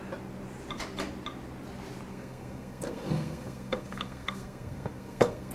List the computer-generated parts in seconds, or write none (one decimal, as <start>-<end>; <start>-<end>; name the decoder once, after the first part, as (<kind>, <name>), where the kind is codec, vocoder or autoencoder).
2.1-5.5 (codec, SNAC)

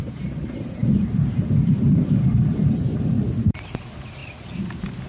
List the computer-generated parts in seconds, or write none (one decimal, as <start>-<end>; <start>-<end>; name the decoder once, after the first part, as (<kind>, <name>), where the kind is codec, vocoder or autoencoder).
0.0-5.1 (vocoder, BigVGAN v2)

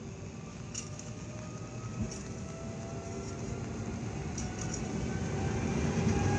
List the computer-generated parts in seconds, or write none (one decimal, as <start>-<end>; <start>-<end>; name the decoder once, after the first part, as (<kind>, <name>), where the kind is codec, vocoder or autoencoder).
0.5-1.2 (autoencoder, DAC-VAE)

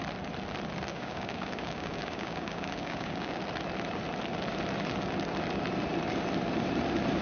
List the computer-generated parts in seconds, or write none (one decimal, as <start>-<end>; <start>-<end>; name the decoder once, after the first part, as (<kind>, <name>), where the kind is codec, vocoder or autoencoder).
0.9-3.4 (codec, DAC)

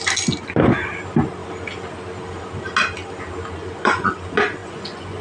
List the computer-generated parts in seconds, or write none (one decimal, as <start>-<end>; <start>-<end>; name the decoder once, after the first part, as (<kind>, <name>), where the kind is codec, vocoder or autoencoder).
3.6-4.1 (vocoder, Vocos); 4.6-5.2

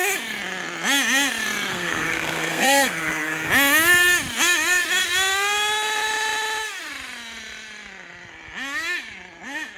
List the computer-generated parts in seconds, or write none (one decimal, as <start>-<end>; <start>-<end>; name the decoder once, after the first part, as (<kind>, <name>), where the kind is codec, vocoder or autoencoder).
1.7-3.5 (codec, SNAC)